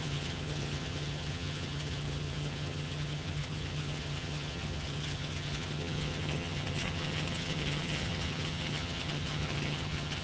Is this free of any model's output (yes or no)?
no